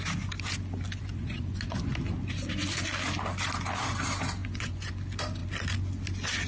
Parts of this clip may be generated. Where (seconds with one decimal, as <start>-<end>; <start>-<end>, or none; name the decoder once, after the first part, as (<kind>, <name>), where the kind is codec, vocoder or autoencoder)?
1.0-1.7 (vocoder, Vocos); 4.4-4.9